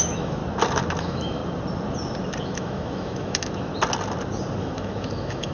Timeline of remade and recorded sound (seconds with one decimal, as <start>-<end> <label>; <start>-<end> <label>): 0.0-0.4 remade; 0.4-1.0 recorded; 1.0-1.4 remade; 1.4-2.4 recorded; 2.4-3.7 remade; 3.7-4.6 recorded; 4.6-5.5 remade